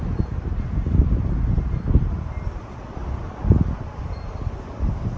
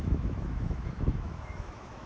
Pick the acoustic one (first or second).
first